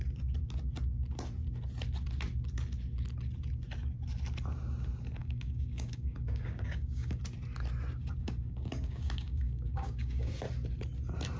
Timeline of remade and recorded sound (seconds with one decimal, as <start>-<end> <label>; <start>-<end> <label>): 0.0-5.2 recorded; 5.2-7.2 remade; 7.2-8.2 recorded; 8.2-10.3 remade; 10.3-11.4 recorded

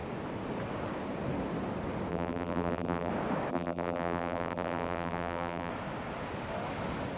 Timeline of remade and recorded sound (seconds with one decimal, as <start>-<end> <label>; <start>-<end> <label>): 0.0-2.1 recorded; 2.1-3.1 remade; 3.1-3.5 recorded; 3.5-5.7 remade; 5.7-7.2 recorded

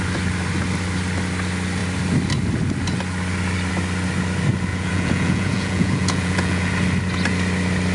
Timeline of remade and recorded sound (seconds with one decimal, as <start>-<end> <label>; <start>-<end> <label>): 0.0-4.7 recorded; 4.7-6.7 remade; 6.7-7.9 recorded

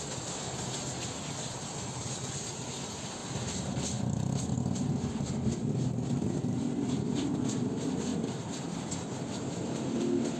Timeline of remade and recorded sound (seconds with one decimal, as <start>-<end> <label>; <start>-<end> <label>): 0.0-10.4 recorded

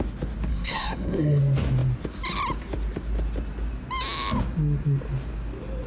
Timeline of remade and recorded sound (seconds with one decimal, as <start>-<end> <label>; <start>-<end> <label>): 0.0-0.5 recorded; 0.5-1.4 remade; 1.4-5.9 recorded

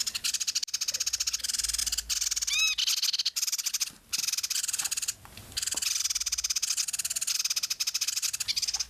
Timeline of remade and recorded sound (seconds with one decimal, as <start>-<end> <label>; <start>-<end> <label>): 0.0-8.9 recorded

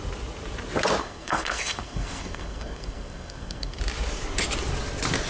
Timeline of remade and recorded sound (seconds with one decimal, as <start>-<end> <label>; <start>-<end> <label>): 0.0-1.0 recorded; 1.0-3.8 remade; 3.8-5.3 recorded

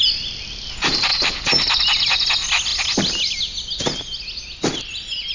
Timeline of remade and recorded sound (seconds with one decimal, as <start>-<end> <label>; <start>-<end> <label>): 0.0-5.3 recorded